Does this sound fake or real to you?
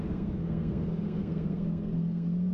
fake